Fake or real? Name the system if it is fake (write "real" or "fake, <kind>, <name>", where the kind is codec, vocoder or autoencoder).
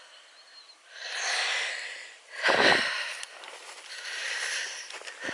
real